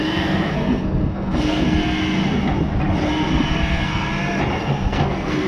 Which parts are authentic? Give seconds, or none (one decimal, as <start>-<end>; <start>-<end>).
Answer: 1.8-3.3; 4.1-4.6